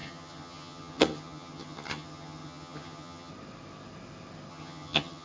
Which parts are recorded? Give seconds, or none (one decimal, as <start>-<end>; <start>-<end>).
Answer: 3.3-4.5

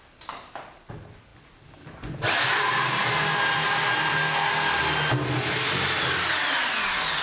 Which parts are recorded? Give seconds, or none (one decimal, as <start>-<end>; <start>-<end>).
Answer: 0.0-7.2

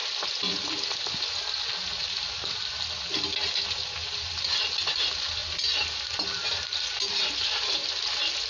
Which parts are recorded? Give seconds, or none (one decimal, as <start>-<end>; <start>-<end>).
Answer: 0.0-8.5

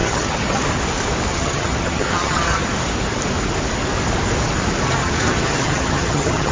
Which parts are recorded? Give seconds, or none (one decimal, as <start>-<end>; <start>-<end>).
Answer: 0.6-1.3; 2.6-5.0

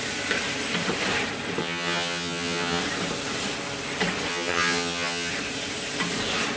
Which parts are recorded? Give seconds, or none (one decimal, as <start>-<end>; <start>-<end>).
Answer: 0.0-1.6; 2.8-4.3; 5.3-6.6

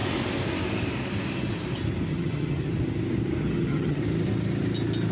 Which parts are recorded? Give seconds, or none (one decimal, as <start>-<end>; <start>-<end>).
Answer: 0.0-2.1; 2.7-3.4; 4.0-5.1

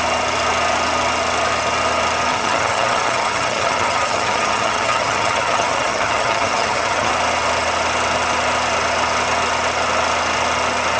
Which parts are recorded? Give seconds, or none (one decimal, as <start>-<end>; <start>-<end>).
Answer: 0.0-2.3; 7.1-11.0